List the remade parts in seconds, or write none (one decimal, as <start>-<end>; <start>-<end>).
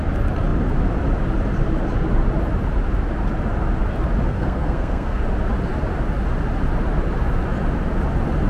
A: 4.3-5.2